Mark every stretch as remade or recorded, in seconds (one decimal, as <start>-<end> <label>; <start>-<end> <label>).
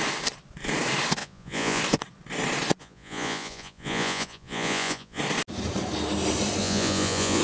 0.0-1.2 recorded; 1.2-1.8 remade; 1.8-2.8 recorded; 2.8-5.2 remade; 5.2-6.6 recorded; 6.6-7.4 remade